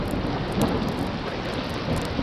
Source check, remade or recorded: recorded